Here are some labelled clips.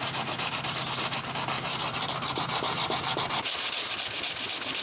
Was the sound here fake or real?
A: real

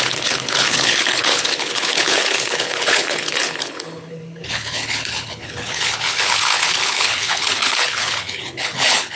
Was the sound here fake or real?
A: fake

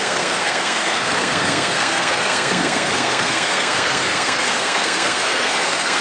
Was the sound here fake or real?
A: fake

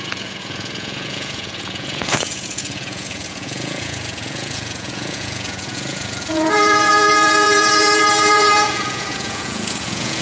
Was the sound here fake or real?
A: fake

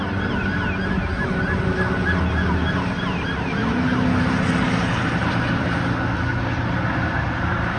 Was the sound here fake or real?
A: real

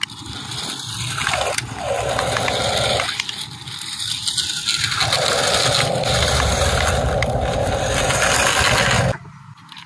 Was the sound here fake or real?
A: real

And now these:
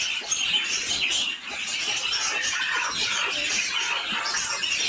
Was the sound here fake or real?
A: real